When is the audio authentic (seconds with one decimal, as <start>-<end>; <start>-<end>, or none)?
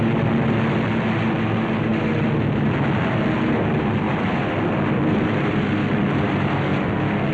0.0-7.3